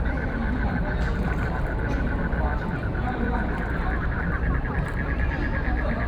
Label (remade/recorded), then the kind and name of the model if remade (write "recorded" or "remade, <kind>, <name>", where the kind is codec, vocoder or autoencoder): remade, vocoder, BigVGAN v2